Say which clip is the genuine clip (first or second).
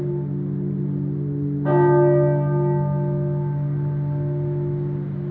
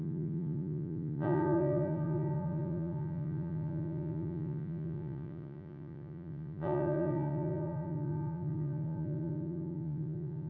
first